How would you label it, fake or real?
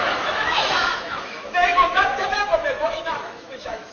fake